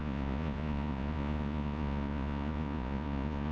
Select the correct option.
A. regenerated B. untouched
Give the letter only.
A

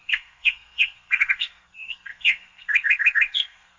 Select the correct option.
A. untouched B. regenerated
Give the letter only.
B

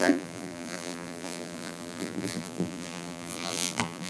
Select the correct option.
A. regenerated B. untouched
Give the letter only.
A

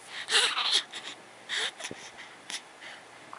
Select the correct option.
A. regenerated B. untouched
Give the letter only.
B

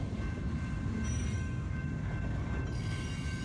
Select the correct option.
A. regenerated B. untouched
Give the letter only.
B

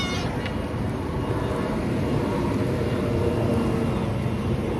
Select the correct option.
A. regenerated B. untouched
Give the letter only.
B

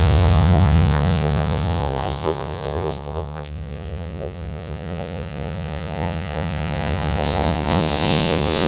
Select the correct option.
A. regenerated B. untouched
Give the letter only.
A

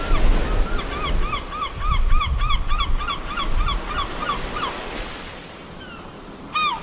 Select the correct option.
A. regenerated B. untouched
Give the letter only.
B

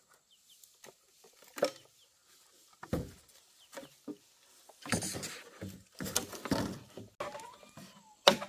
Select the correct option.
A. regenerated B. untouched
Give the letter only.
B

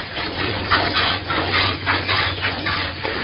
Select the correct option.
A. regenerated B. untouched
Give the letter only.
A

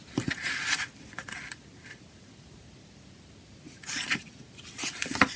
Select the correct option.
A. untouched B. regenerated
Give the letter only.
A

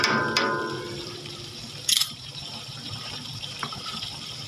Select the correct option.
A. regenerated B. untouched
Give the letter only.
A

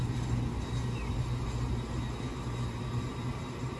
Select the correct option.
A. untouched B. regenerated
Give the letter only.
A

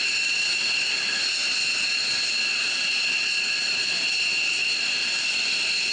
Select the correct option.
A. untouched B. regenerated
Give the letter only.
A